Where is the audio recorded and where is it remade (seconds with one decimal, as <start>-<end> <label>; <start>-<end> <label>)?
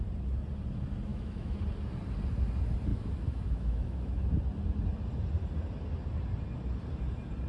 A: 0.0-1.1 recorded; 1.1-1.6 remade; 1.6-2.9 recorded; 2.9-4.3 remade; 4.3-7.5 recorded